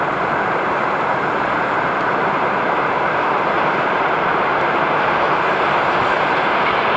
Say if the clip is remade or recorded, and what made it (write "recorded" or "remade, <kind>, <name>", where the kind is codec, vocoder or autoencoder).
remade, vocoder, BigVGAN v2